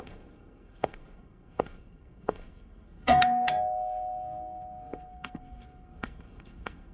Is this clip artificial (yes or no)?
yes